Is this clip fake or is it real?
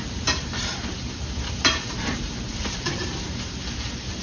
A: fake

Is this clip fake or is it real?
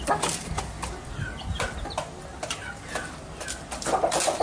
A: real